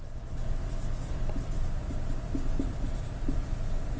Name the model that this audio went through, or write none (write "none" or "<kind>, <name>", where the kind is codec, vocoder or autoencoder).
none